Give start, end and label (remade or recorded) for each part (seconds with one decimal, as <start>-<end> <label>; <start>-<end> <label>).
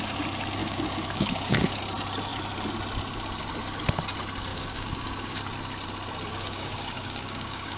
0.0-0.6 recorded; 0.6-1.8 remade; 1.8-4.5 recorded; 4.5-5.4 remade; 5.4-6.3 recorded; 6.3-7.8 remade